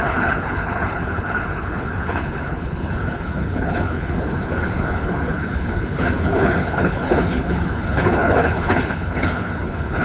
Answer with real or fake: fake